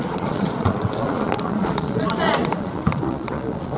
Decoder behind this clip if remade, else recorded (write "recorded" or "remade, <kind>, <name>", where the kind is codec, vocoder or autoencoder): remade, vocoder, Vocos